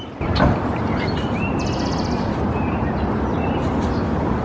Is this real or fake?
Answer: real